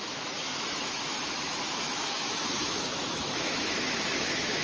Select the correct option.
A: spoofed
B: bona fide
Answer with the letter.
A